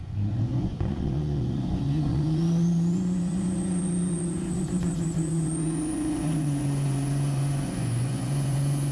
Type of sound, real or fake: fake